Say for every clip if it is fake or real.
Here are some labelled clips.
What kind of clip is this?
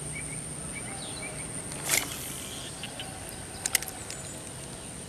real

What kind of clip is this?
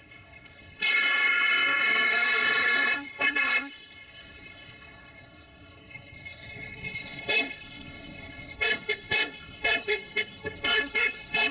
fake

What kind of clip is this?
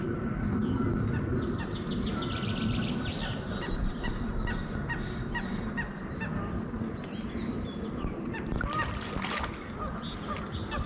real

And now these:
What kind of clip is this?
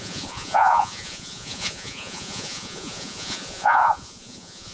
fake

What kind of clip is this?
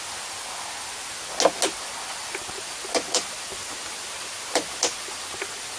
real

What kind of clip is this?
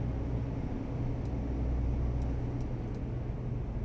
real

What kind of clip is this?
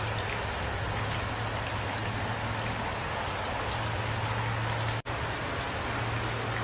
real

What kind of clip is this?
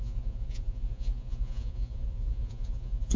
fake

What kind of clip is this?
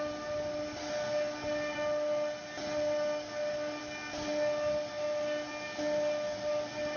real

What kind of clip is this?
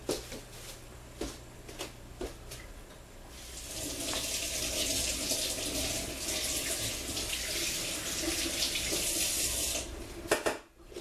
real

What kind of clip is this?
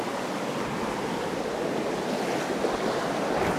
real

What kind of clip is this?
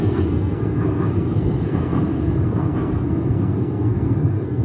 fake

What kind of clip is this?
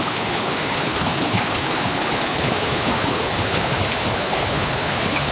fake